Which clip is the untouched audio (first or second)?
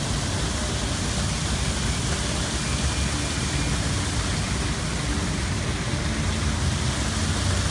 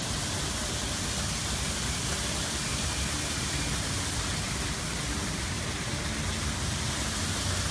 first